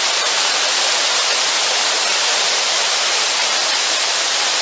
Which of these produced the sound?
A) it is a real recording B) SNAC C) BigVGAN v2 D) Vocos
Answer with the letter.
C